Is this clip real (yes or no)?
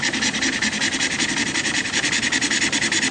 yes